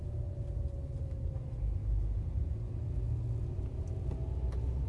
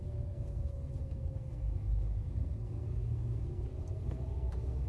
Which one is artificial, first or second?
second